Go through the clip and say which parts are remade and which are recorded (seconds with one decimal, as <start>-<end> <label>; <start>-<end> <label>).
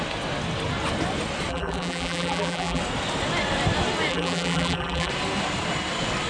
0.0-1.5 recorded; 1.5-2.8 remade; 2.8-4.1 recorded; 4.1-5.1 remade; 5.1-6.3 recorded